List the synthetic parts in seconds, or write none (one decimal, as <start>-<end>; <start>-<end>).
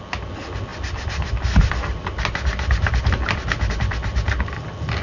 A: none